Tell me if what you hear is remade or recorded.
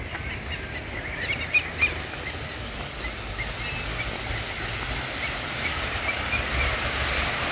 recorded